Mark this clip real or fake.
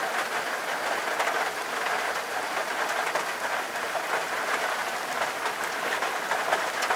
real